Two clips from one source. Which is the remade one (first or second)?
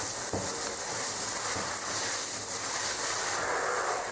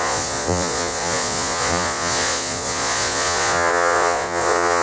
second